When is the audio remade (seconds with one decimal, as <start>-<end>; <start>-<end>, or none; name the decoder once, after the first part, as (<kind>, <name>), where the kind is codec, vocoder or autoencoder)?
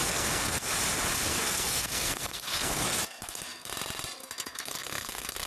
0.0-0.7 (codec, SNAC); 1.3-3.7; 4.2-5.5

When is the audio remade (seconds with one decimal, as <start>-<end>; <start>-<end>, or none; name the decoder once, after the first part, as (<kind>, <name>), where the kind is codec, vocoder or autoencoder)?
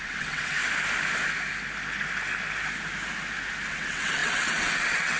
0.0-0.6 (vocoder, WaveNeXt); 3.7-5.2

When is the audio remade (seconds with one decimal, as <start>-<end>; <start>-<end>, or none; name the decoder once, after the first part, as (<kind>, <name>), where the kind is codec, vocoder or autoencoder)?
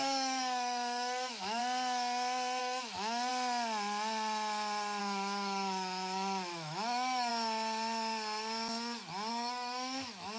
0.0-1.6 (autoencoder, DAC-VAE); 2.6-3.3; 5.0-7.3; 9.3-10.4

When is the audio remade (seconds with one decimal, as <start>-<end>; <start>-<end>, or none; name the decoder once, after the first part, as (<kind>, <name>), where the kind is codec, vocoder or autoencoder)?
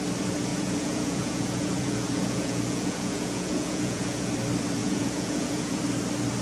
0.5-4.3 (vocoder, Vocos); 4.8-5.8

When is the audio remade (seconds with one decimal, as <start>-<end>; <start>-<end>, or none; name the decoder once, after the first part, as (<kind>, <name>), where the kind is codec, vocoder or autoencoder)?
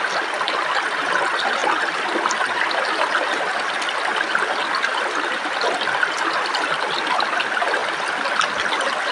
1.6-2.4 (vocoder, BigVGAN v2); 3.5-4.1; 7.8-9.1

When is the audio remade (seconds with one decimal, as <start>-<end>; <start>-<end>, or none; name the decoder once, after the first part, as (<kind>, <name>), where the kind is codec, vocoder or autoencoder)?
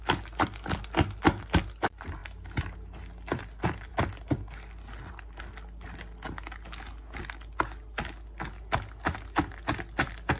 none